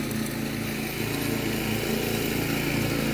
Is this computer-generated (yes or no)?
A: no